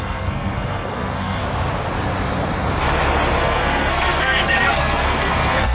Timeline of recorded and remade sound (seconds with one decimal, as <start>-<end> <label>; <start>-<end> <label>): 0.0-1.4 remade; 1.4-3.4 recorded; 3.4-5.7 remade